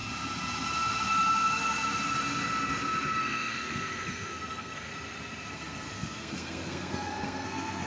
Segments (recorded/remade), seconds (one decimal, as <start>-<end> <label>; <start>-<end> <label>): 0.0-3.2 recorded; 3.2-4.9 remade; 4.9-5.5 recorded; 5.5-7.9 remade